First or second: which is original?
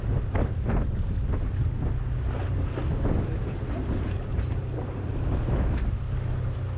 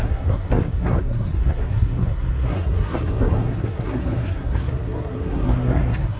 first